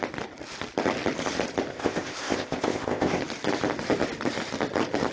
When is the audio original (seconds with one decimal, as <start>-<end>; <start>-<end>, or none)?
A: 0.0-1.7; 3.2-5.1